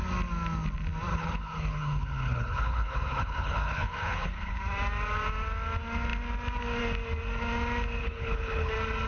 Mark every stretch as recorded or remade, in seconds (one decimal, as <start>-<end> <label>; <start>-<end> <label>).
0.0-1.1 recorded; 1.1-4.6 remade; 4.6-8.0 recorded; 8.0-8.7 remade; 8.7-9.1 recorded